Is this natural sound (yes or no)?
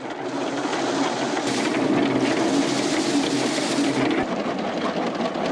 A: yes